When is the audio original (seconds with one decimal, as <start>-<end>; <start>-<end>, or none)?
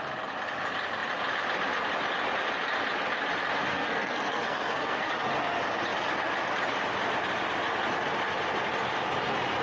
0.0-3.7; 5.1-9.6